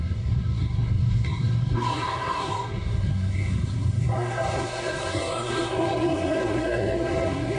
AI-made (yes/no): yes